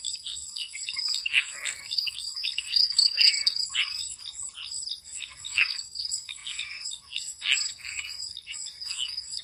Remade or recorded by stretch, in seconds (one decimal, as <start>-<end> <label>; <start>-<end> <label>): 0.0-4.2 remade; 4.2-5.0 recorded; 5.0-9.4 remade